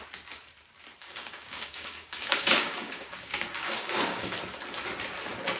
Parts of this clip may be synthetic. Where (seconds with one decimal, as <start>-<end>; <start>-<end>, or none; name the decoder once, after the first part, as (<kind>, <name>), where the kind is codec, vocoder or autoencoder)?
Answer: 1.0-4.4 (codec, DAC)